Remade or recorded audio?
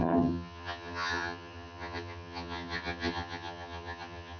remade